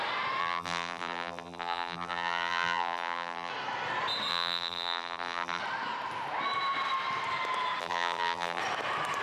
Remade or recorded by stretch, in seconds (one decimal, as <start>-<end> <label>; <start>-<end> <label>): 0.0-0.4 recorded; 0.4-3.5 remade; 3.5-4.3 recorded; 4.3-5.6 remade; 5.6-7.8 recorded; 7.8-8.6 remade; 8.6-9.2 recorded